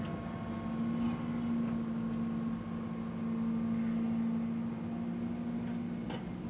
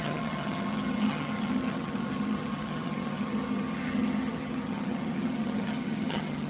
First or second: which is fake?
second